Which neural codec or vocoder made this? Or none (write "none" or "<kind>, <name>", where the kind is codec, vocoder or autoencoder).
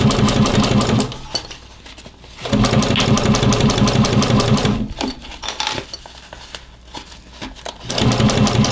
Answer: none